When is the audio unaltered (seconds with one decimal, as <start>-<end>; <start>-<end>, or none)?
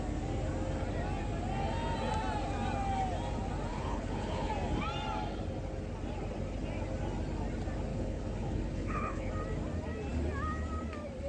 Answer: 0.0-3.7; 4.5-7.9; 9.3-11.3